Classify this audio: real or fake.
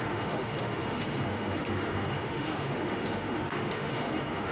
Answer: fake